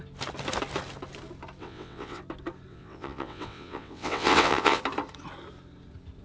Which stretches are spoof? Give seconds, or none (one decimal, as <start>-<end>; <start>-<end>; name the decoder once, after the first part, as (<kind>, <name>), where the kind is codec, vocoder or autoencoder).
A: 1.6-2.2 (vocoder, WaveNeXt); 2.7-4.8